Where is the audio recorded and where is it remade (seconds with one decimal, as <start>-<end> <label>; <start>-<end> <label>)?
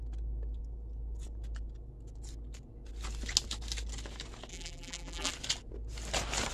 0.0-4.5 recorded; 4.5-5.3 remade; 5.3-6.5 recorded